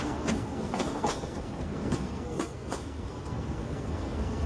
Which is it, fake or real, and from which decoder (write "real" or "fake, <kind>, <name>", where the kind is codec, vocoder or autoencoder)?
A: fake, codec, SNAC